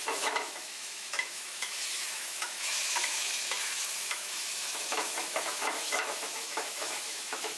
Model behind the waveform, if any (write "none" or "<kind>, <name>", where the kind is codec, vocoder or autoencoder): autoencoder, DAC-VAE